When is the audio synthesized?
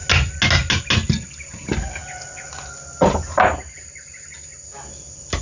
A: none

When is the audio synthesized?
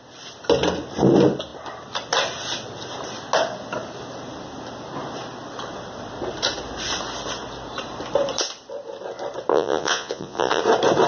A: 9.5-10.6 (vocoder, Vocos)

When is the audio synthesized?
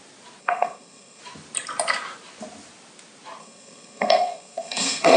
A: 0.4-1.2 (codec, SNAC); 3.4-5.2